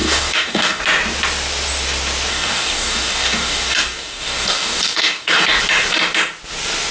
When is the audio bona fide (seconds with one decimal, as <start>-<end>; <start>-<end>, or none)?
0.8-2.3; 5.6-6.9